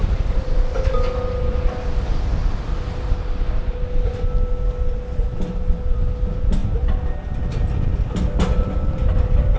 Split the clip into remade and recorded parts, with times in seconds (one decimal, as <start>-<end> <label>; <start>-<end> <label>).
0.0-9.6 recorded